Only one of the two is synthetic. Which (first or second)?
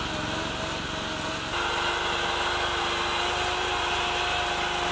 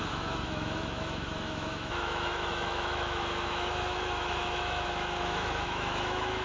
second